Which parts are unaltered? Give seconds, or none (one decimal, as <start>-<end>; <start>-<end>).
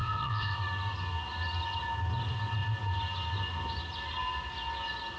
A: 0.6-5.2